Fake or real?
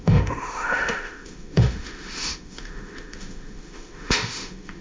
fake